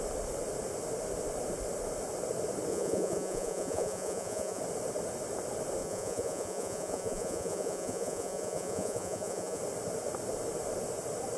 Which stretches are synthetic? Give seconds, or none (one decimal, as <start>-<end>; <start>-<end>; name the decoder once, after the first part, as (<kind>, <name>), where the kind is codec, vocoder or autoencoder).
2.7-4.6 (vocoder, Vocos); 5.8-9.6